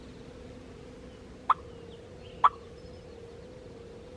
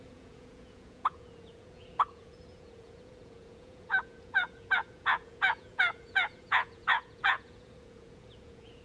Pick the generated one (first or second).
second